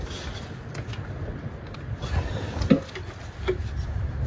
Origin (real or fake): real